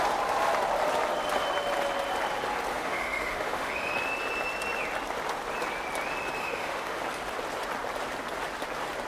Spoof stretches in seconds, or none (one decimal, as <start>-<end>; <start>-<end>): 2.7-3.9; 6.4-7.0